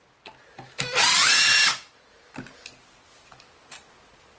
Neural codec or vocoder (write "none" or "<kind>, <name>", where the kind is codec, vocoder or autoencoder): none